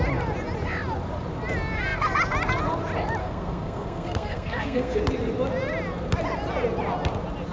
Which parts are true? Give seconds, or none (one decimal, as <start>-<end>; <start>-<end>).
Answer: 0.0-3.2; 5.0-7.5